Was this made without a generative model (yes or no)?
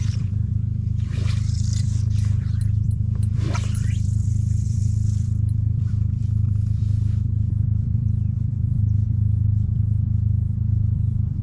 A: no